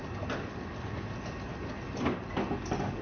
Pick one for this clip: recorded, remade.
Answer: recorded